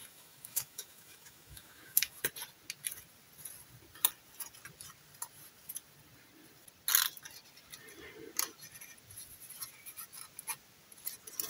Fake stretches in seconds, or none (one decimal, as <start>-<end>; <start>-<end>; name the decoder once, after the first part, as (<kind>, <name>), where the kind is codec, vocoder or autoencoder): 0.0-2.2 (autoencoder, DAC-VAE)